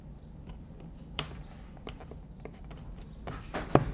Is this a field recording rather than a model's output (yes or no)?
no